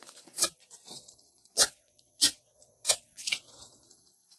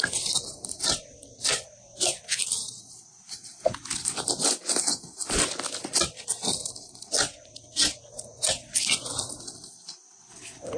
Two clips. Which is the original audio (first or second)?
second